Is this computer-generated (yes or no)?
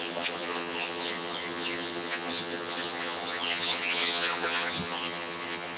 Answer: yes